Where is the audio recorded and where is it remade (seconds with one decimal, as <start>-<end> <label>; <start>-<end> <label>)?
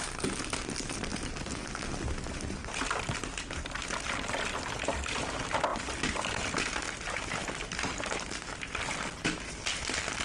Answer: 0.0-10.2 recorded